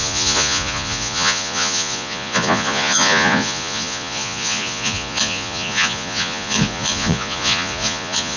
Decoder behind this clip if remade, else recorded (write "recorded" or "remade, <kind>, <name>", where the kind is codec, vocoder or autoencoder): remade, vocoder, Vocos